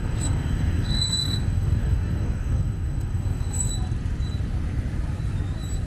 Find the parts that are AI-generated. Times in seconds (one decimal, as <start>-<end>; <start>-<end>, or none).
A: 0.0-3.7